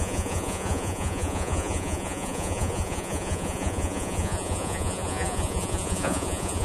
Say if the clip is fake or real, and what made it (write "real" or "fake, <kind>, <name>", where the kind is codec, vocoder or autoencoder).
fake, vocoder, Vocos